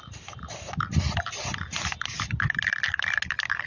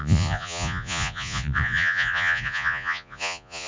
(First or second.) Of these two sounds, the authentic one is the first